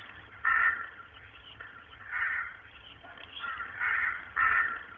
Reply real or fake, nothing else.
fake